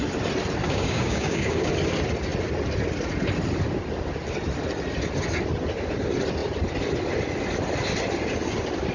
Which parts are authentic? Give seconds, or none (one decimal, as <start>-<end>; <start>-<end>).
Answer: 0.0-0.6; 1.7-8.9